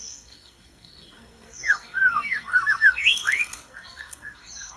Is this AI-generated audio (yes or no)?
yes